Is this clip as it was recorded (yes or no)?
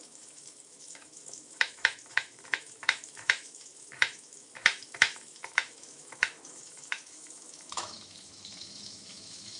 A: no